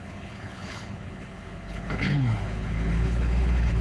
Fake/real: fake